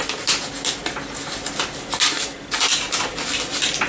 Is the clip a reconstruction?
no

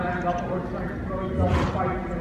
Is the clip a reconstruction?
no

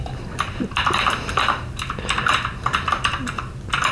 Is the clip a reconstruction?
yes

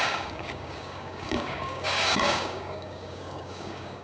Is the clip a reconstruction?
yes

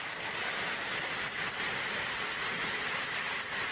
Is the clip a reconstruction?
no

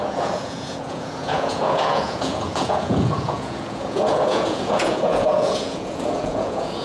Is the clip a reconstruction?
yes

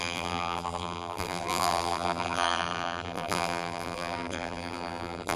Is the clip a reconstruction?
yes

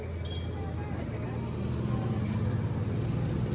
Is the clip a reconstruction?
no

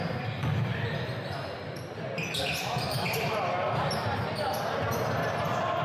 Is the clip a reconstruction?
no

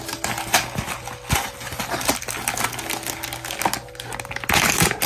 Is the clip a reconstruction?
no